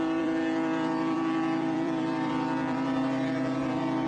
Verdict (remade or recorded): remade